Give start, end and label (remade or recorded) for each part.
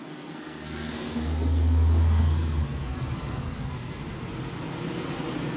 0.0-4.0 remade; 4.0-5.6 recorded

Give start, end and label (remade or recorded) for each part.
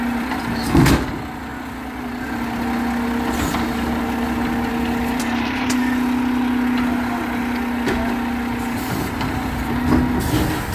0.0-10.7 recorded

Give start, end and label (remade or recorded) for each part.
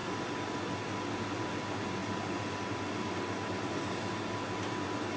0.0-5.2 recorded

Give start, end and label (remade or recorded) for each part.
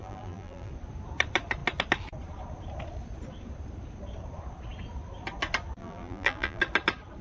0.0-0.7 remade; 0.7-5.8 recorded; 5.8-6.6 remade; 6.6-7.2 recorded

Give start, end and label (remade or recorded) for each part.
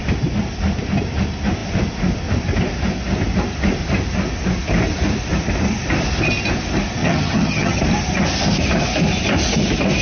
0.0-7.0 recorded; 7.0-7.8 remade; 7.8-10.0 recorded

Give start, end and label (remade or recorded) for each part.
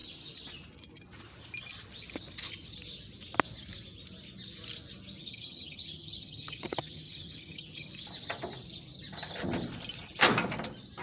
0.0-5.2 recorded; 5.2-7.9 remade; 7.9-11.0 recorded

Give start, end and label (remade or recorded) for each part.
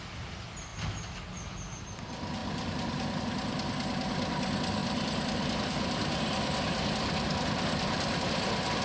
0.0-2.4 recorded; 2.4-3.2 remade; 3.2-4.8 recorded; 4.8-8.8 remade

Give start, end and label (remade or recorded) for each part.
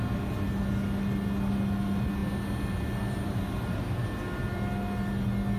0.0-5.6 recorded